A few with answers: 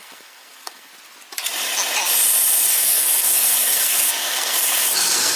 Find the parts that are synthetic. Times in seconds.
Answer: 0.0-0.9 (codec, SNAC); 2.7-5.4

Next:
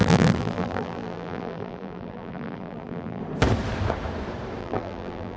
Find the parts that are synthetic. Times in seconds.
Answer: 0.0-3.2 (vocoder, BigVGAN v2); 4.6-5.4

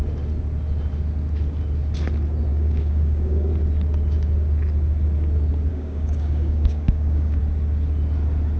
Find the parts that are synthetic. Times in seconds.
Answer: 2.5-3.5 (codec, DAC); 5.7-7.4